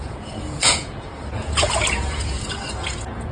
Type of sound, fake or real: fake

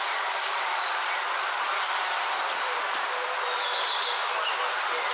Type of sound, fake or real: real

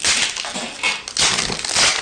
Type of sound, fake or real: real